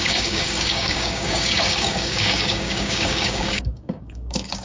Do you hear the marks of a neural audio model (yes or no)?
yes